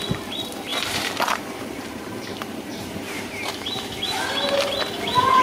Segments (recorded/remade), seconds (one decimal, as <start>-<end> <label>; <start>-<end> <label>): 0.0-0.7 recorded; 0.7-3.5 remade; 3.5-5.4 recorded